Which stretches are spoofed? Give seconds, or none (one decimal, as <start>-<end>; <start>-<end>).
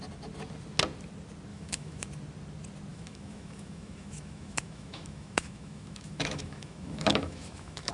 1.5-2.1; 2.9-7.9